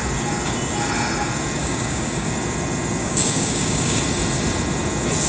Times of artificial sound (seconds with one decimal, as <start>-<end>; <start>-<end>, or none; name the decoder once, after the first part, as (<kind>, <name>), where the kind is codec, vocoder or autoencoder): 1.6-2.3 (codec, DAC); 3.0-4.0